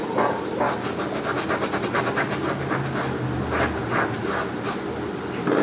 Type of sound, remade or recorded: recorded